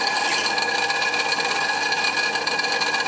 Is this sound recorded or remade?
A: recorded